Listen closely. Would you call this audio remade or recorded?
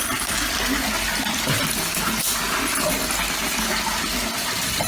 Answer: recorded